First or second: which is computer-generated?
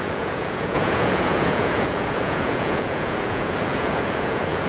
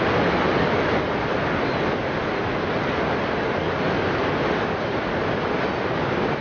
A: first